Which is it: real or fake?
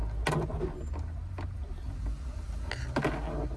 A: real